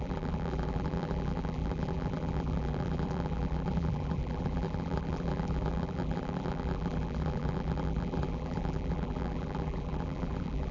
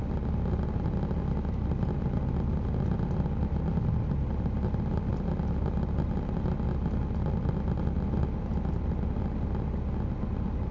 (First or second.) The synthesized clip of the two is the first